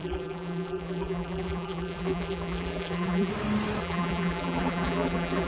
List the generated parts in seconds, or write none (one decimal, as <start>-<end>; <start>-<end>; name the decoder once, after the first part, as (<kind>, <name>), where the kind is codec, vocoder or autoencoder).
0.0-3.3 (vocoder, BigVGAN v2); 3.8-5.5